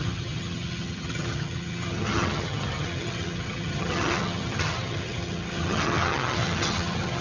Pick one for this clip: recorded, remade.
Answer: remade